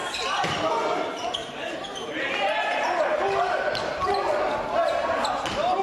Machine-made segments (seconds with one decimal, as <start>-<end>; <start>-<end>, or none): 0.0-0.7; 1.4-4.2